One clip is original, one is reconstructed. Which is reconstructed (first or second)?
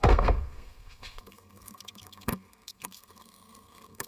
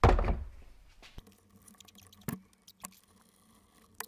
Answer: first